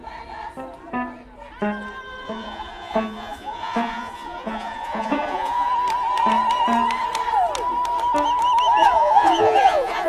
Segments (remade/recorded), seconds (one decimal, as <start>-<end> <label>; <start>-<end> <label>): 0.0-2.2 recorded; 2.2-5.7 remade; 5.7-8.8 recorded; 8.8-10.1 remade